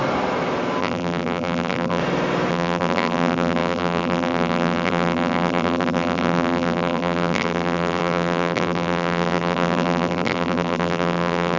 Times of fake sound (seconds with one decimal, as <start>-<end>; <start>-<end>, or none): 0.8-2.0; 2.5-11.6

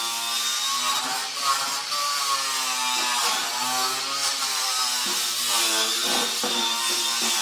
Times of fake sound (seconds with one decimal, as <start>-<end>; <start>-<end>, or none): 1.2-2.2; 4.2-6.6